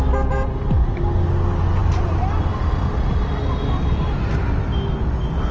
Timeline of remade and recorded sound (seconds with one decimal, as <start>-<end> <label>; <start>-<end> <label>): 0.0-5.5 recorded